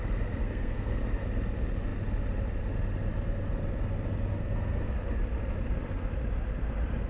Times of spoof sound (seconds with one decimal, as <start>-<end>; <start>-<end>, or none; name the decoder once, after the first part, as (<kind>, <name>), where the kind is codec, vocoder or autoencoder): 0.4-1.0 (codec, SNAC)